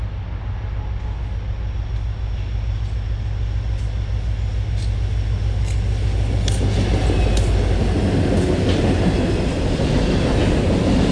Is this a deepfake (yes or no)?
no